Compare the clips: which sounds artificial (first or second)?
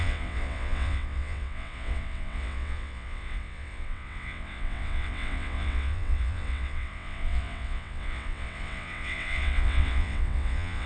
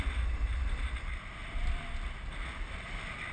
first